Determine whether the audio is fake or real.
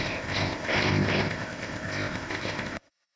fake